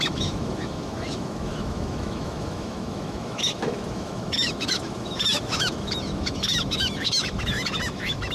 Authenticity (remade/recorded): remade